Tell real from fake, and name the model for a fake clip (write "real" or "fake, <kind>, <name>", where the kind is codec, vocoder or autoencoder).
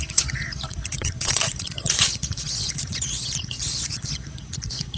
fake, vocoder, Vocos